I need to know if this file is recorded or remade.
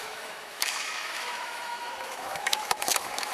remade